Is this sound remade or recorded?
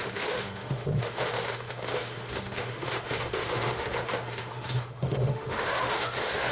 remade